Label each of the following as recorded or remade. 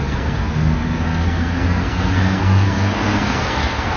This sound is remade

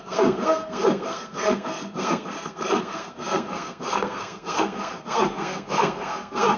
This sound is remade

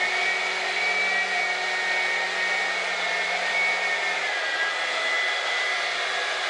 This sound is recorded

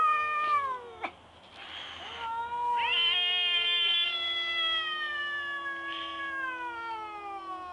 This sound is recorded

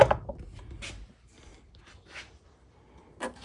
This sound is recorded